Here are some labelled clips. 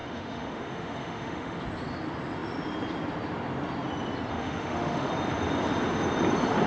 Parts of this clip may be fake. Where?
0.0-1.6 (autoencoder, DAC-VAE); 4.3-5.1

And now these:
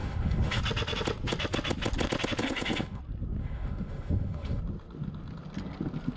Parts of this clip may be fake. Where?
0.0-0.6 (autoencoder, DAC-VAE); 2.4-3.0; 3.4-4.6